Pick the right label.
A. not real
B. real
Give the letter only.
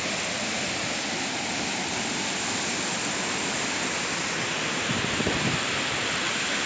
B